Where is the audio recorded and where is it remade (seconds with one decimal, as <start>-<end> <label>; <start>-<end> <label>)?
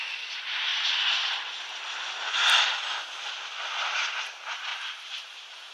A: 0.0-4.7 recorded; 4.7-5.7 remade